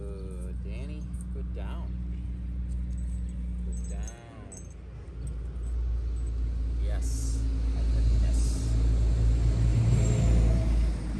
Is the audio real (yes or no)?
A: yes